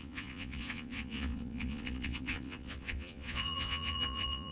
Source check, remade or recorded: remade